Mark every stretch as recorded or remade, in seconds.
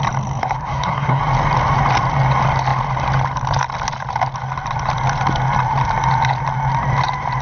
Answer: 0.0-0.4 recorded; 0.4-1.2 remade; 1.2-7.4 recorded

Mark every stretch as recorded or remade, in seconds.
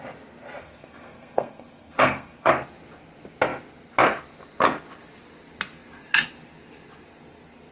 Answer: 0.0-0.6 recorded; 0.6-2.5 remade; 2.5-7.7 recorded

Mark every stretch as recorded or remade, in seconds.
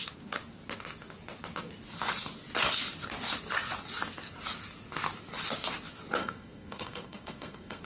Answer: 0.0-6.2 recorded; 6.2-7.8 remade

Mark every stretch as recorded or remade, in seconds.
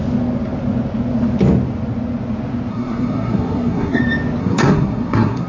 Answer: 0.0-2.7 recorded; 2.7-4.0 remade; 4.0-4.4 recorded; 4.4-5.5 remade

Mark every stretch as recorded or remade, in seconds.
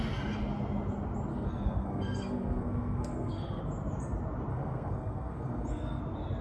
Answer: 0.0-1.3 recorded; 1.3-3.6 remade; 3.6-4.5 recorded; 4.5-6.0 remade; 6.0-6.4 recorded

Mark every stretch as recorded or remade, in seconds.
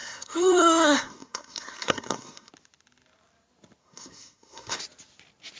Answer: 0.0-2.5 remade; 2.5-3.8 recorded; 3.8-4.8 remade; 4.8-5.6 recorded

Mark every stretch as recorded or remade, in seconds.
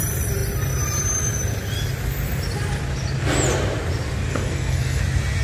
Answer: 0.0-4.3 recorded; 4.3-5.0 remade; 5.0-5.4 recorded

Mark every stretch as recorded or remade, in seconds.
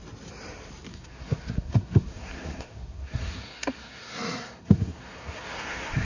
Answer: 0.0-0.9 recorded; 0.9-6.0 remade